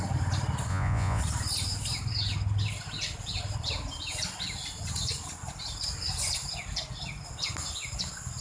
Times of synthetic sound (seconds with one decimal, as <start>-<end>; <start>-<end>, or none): 0.7-1.2